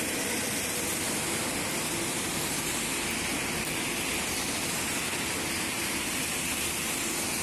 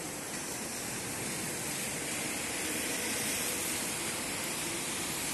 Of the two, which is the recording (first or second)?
first